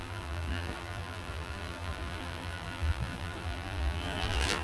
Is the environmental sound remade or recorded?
remade